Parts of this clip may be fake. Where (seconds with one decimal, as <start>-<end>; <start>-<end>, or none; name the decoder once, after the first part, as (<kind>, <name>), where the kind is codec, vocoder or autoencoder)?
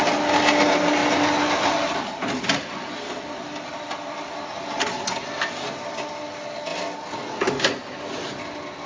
none